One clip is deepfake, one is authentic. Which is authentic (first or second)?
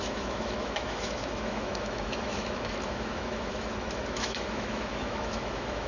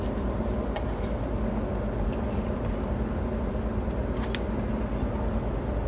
second